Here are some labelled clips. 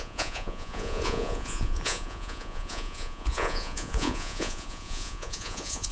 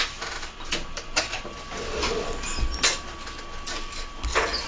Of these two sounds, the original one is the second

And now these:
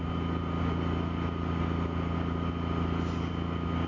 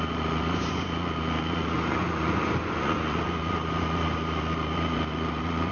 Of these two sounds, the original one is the first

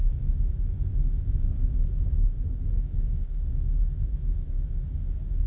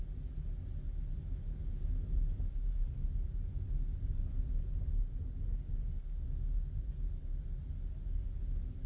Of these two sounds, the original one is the second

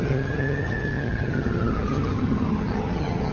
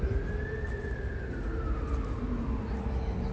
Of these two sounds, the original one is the second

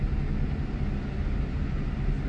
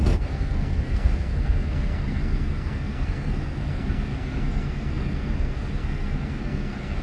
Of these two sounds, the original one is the first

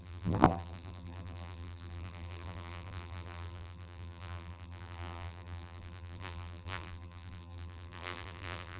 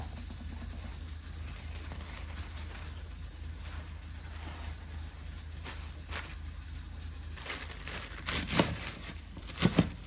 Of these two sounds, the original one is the second